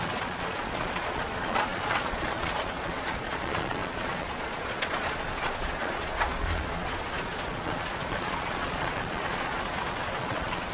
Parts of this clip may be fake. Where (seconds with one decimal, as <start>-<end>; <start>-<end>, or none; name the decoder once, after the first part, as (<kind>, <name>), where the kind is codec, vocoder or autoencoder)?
0.0-10.7 (vocoder, Vocos)